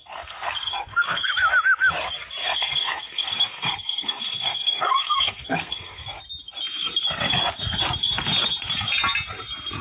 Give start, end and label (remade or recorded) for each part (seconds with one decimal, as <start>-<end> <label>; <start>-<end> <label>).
0.0-1.3 remade; 1.3-2.4 recorded; 2.4-6.0 remade; 6.0-9.8 recorded